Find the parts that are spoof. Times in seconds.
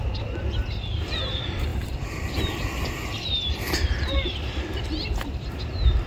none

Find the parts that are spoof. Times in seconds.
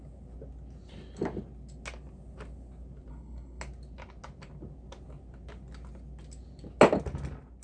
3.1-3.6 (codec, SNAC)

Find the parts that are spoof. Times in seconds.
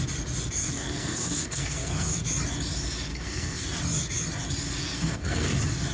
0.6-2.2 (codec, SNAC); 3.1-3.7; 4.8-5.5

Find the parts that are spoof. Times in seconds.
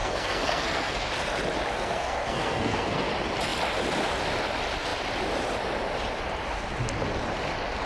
0.0-1.1 (codec, SNAC); 1.7-3.1